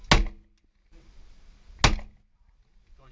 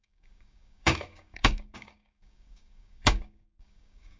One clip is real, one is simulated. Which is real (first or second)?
first